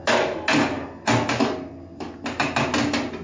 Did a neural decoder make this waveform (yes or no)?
no